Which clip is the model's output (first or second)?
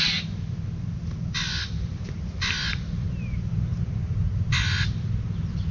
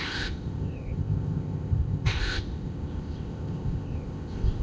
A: second